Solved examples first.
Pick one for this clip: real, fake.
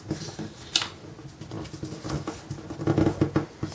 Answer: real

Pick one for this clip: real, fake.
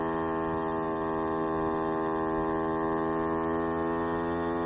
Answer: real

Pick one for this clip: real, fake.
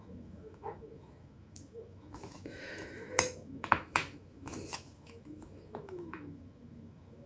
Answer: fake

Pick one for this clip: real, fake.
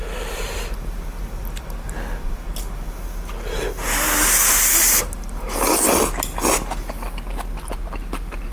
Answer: real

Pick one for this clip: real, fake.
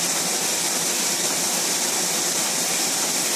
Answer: fake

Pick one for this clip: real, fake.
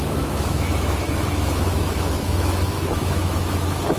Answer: fake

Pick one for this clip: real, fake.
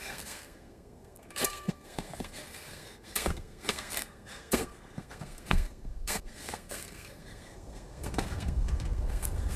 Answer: fake